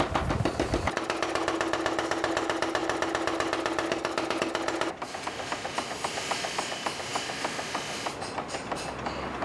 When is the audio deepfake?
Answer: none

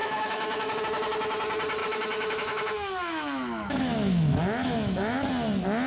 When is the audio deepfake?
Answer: 0.0-0.8 (autoencoder, DAC-VAE); 1.8-5.3

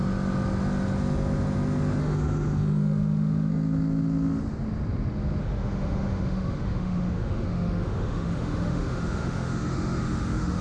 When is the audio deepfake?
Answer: 2.0-3.5 (autoencoder, DAC-VAE); 5.4-10.6

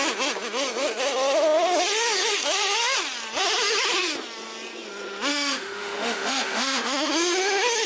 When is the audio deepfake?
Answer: 5.3-7.1 (autoencoder, DAC-VAE)

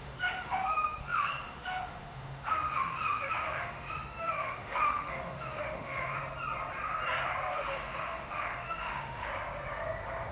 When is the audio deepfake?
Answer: 0.0-6.2 (autoencoder, DAC-VAE); 7.5-9.3